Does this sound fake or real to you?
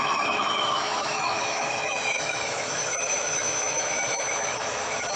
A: fake